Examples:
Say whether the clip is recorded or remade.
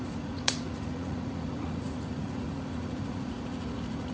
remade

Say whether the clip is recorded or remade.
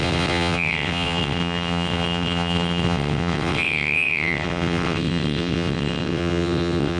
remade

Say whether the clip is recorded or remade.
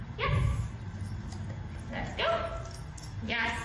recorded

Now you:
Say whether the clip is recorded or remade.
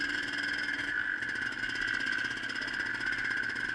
recorded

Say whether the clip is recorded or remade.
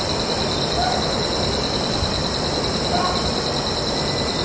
recorded